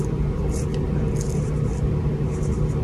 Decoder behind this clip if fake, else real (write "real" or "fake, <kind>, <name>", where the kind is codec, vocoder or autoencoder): real